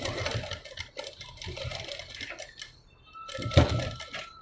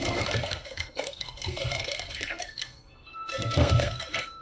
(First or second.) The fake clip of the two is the second